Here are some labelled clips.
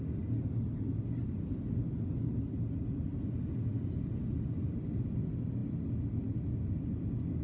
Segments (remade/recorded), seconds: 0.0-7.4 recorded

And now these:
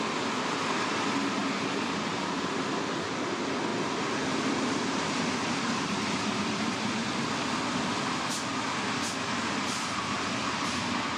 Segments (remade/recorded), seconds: 0.0-1.4 recorded; 1.4-2.1 remade; 2.1-3.7 recorded; 3.7-8.0 remade; 8.0-11.2 recorded

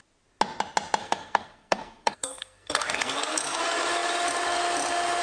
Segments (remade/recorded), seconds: 0.0-1.0 recorded; 1.0-3.6 remade; 3.6-5.2 recorded

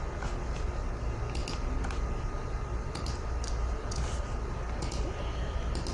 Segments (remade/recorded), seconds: 0.0-5.9 recorded